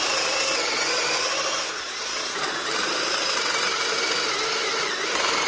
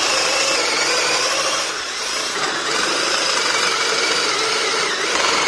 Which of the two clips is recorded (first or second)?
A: first